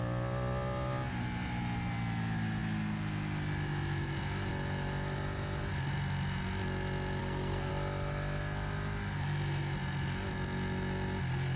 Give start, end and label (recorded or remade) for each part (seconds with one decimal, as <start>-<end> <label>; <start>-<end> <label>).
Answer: 0.0-7.2 recorded; 7.2-7.7 remade; 7.7-11.6 recorded